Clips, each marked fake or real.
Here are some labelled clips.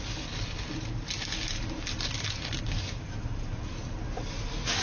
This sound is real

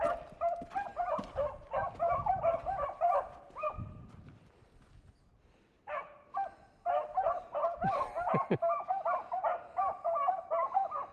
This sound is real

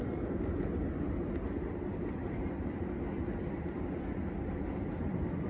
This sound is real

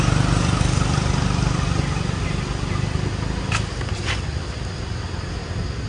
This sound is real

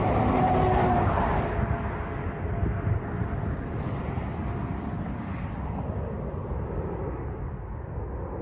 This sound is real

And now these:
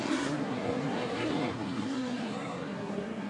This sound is fake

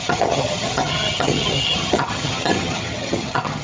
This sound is fake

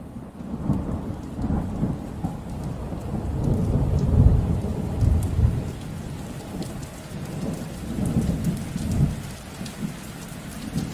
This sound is real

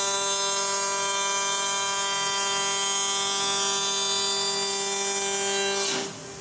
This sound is real